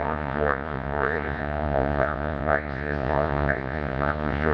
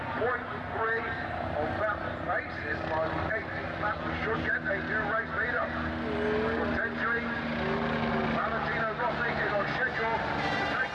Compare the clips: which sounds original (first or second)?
second